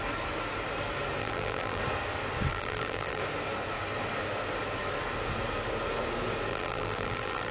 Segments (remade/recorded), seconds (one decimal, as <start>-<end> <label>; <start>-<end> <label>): 0.0-1.2 recorded; 1.2-1.8 remade; 1.8-2.5 recorded; 2.5-3.2 remade; 3.2-6.5 recorded; 6.5-7.5 remade